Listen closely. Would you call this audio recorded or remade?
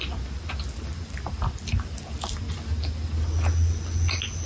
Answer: recorded